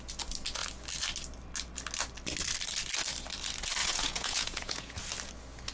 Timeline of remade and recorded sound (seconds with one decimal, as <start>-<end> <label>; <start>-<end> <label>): 0.0-3.8 recorded; 3.8-5.0 remade; 5.0-5.7 recorded